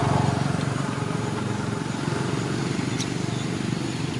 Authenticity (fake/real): real